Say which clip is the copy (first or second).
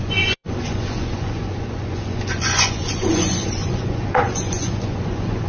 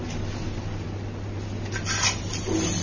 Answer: first